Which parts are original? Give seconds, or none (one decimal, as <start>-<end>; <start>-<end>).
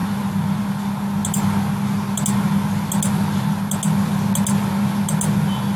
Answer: 0.0-5.8